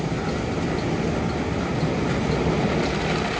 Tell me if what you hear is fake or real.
real